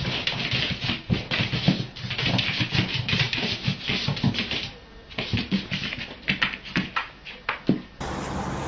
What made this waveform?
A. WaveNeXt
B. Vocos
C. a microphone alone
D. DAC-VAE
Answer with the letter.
C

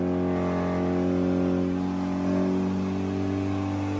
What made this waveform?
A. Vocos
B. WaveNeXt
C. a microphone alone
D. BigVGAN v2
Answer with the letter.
C